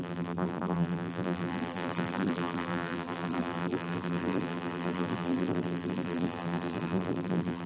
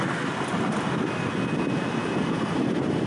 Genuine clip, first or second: second